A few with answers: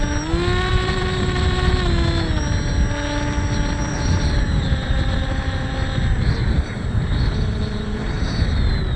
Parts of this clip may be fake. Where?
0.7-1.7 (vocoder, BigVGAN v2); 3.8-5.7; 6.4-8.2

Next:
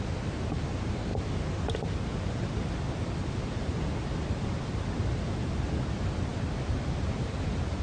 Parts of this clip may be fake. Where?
0.0-6.3 (vocoder, BigVGAN v2); 7.0-7.8

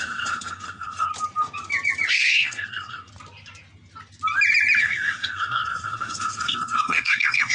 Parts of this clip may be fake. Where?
0.0-1.1 (codec, SNAC); 2.1-3.1; 4.8-7.5

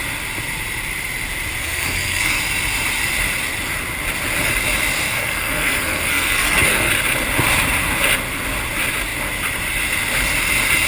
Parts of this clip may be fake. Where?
1.6-2.4 (codec, SNAC); 5.1-6.9